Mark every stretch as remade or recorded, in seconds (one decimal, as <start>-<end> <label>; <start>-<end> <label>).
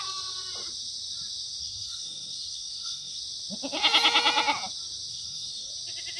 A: 0.0-1.6 recorded; 1.6-3.2 remade; 3.2-5.1 recorded; 5.1-5.7 remade; 5.7-6.2 recorded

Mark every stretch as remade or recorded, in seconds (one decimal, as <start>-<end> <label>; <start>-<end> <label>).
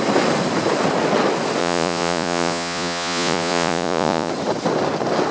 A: 0.0-1.6 recorded; 1.6-4.3 remade; 4.3-5.3 recorded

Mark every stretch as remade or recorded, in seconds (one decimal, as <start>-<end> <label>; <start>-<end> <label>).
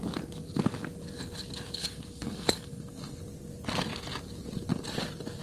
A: 0.0-1.8 recorded; 1.8-3.2 remade; 3.2-5.4 recorded